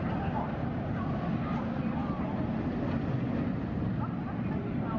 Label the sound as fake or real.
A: real